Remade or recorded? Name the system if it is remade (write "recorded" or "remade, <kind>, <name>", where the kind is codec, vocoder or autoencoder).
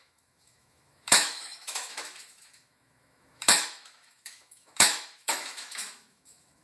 remade, autoencoder, DAC-VAE